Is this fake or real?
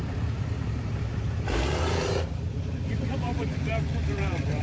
fake